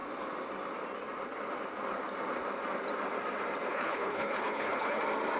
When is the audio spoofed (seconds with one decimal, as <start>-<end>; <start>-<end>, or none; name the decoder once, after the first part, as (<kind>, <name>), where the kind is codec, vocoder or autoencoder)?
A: 3.7-5.0 (codec, HILCodec)